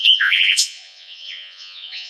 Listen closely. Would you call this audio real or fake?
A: fake